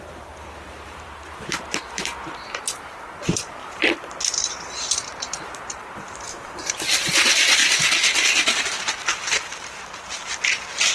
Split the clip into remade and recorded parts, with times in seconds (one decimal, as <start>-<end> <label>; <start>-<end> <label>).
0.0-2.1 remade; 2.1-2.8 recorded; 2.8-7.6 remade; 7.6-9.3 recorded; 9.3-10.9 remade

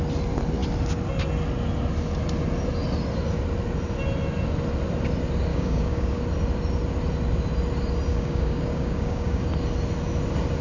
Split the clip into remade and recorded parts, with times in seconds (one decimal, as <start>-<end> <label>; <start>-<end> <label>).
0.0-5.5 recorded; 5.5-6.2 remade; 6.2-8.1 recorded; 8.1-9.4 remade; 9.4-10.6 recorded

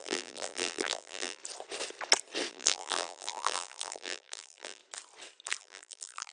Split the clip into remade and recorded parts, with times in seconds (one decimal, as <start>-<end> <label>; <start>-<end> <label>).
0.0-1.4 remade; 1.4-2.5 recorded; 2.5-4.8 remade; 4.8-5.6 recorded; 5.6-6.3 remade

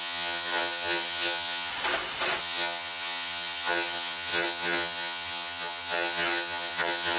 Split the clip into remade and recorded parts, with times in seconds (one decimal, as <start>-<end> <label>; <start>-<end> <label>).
0.0-1.7 remade; 1.7-2.4 recorded; 2.4-7.2 remade

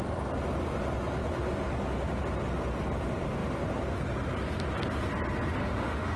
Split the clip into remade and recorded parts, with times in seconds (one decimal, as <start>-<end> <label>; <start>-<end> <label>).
0.0-5.6 recorded; 5.6-6.2 remade

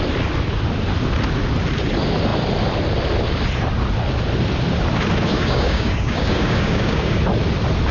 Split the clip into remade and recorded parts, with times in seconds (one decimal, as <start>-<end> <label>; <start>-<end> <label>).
0.0-5.3 recorded; 5.3-7.2 remade; 7.2-7.9 recorded